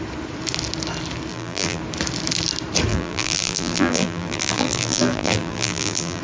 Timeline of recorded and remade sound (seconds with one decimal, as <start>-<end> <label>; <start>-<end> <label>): 0.0-1.3 recorded; 1.3-1.8 remade; 1.8-2.9 recorded; 2.9-6.2 remade